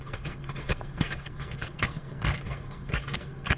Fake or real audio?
fake